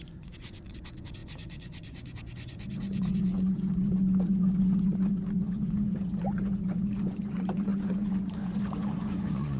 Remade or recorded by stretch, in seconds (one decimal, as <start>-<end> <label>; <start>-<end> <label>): 0.0-9.6 remade